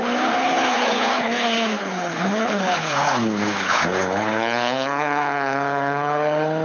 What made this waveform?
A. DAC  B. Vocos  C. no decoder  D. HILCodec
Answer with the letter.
D